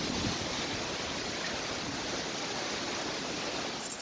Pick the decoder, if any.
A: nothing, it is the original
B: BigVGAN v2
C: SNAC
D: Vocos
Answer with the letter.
A